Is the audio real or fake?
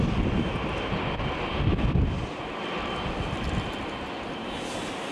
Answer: real